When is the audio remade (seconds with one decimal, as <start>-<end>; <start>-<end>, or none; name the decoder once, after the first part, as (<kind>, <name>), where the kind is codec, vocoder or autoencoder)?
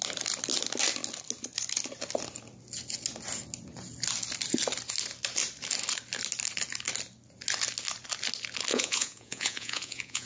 8.7-10.3 (vocoder, Vocos)